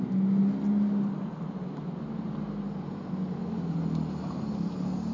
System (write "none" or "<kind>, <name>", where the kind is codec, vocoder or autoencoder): none